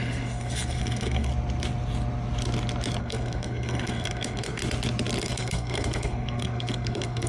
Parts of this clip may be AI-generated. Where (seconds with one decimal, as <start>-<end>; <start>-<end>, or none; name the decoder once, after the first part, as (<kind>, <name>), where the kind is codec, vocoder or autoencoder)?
0.0-1.3 (codec, SNAC); 3.0-4.6; 5.2-7.3